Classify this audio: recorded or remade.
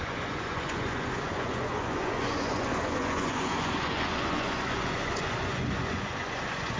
remade